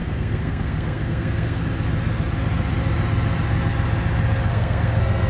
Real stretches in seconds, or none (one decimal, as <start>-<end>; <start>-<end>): 1.6-4.5